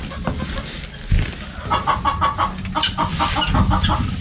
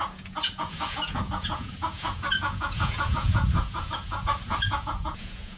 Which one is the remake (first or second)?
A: second